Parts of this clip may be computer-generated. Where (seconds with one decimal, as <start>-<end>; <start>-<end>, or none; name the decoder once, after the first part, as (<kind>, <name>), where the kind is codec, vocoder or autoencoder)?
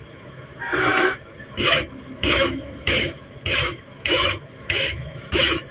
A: 0.0-5.7 (autoencoder, DAC-VAE)